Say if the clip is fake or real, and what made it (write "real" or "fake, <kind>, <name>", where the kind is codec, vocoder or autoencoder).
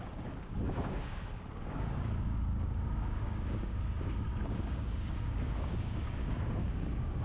fake, codec, DAC